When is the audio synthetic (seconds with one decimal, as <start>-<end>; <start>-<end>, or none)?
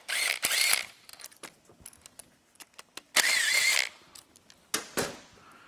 none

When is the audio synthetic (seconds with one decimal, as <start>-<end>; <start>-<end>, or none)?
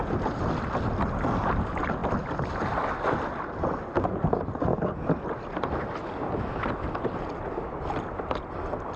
none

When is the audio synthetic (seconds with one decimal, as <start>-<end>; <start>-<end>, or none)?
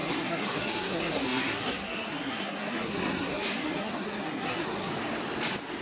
0.0-4.9